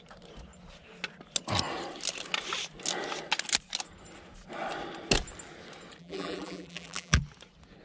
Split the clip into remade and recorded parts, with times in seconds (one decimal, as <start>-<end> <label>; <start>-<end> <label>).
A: 0.0-6.0 recorded; 6.0-7.2 remade; 7.2-7.8 recorded

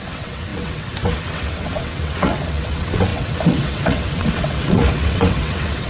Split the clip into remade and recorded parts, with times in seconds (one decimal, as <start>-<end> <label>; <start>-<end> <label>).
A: 0.0-5.9 remade